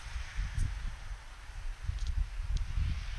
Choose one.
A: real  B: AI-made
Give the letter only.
A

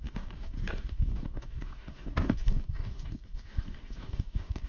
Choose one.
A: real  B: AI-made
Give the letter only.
B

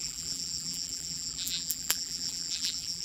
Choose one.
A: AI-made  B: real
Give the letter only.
A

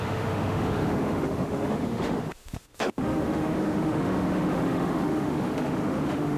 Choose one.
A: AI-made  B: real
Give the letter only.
A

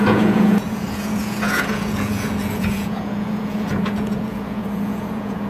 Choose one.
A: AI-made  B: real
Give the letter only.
A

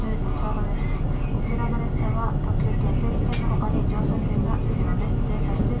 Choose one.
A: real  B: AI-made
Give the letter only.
A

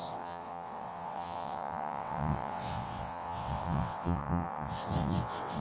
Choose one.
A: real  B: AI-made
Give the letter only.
B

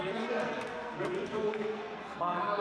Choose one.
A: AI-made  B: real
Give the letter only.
A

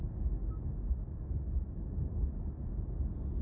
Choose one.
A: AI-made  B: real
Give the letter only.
B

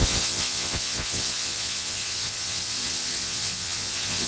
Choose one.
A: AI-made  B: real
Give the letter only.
A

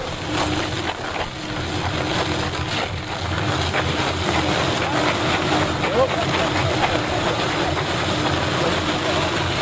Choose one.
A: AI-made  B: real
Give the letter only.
B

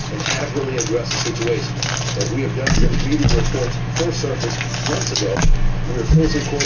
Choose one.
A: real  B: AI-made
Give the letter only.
A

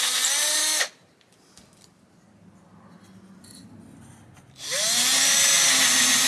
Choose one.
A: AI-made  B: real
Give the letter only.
B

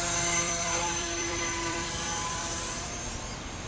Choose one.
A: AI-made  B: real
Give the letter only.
A